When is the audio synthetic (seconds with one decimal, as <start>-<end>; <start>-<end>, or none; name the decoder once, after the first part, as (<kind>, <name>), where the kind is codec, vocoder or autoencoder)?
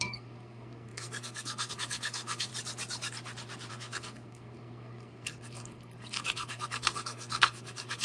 0.0-2.5 (codec, SNAC); 3.7-8.0